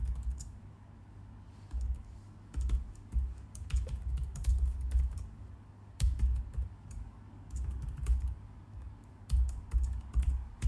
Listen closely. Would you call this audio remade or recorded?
remade